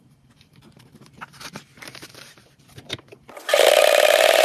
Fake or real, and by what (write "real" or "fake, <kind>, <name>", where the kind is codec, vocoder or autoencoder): fake, vocoder, BigVGAN v2